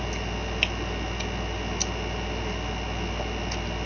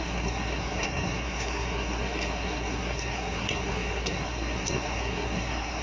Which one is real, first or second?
first